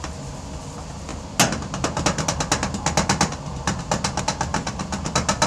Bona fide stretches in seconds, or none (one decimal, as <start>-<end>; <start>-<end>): 0.0-5.5